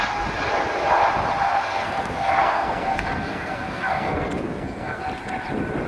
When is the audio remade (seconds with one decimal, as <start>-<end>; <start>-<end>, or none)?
1.5-5.0